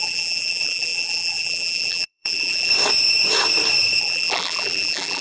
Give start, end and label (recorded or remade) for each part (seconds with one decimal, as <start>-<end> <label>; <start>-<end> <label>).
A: 0.0-2.7 remade; 2.7-4.0 recorded; 4.0-5.2 remade